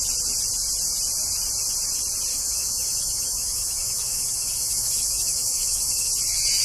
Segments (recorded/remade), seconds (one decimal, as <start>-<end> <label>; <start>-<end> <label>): 0.0-2.3 recorded; 2.3-6.1 remade; 6.1-6.6 recorded